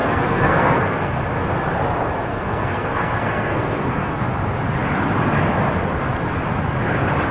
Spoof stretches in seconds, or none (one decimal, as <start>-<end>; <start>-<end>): 0.0-1.2; 2.3-4.2